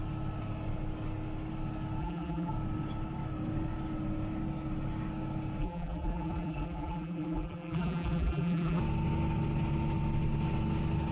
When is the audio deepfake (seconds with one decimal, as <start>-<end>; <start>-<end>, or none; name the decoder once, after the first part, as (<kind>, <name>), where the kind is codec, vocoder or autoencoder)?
2.0-2.5 (vocoder, BigVGAN v2); 5.6-8.8